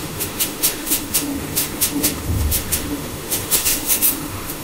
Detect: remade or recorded remade